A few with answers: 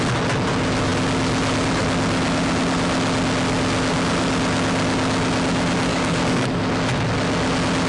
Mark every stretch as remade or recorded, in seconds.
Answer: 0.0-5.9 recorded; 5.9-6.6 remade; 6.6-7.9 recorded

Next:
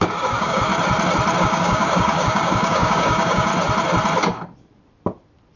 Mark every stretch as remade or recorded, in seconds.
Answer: 0.0-0.7 remade; 0.7-1.4 recorded; 1.4-3.5 remade; 3.5-5.6 recorded

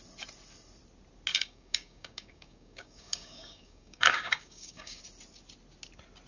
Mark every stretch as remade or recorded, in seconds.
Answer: 0.0-1.3 recorded; 1.3-5.0 remade; 5.0-6.3 recorded

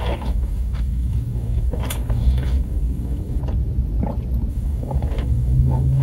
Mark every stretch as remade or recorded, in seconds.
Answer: 0.0-3.4 remade; 3.4-4.5 recorded; 4.5-6.0 remade